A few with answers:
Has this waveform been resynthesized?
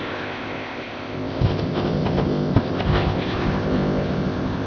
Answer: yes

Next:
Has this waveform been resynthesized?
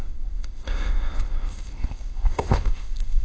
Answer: yes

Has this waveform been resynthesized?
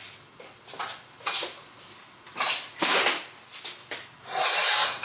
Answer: no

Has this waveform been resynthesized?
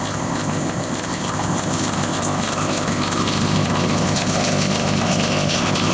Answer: yes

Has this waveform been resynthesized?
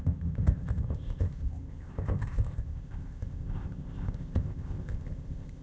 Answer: yes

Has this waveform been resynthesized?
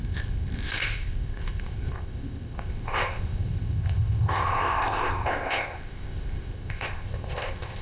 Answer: yes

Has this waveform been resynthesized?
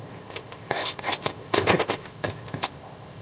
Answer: yes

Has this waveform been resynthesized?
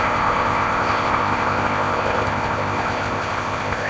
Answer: yes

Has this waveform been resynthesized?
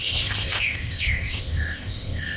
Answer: yes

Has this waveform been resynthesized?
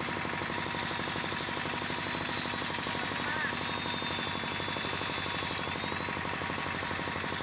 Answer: no